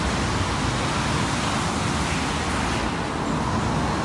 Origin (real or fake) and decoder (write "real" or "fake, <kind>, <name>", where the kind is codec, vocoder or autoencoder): real